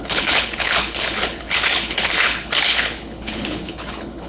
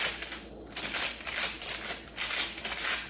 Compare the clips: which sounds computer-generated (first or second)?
first